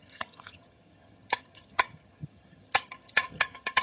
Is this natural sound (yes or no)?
no